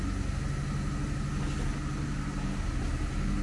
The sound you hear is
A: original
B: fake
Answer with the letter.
A